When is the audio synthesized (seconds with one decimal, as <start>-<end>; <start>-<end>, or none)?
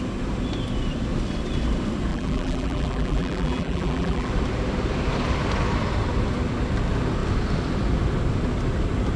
2.1-4.3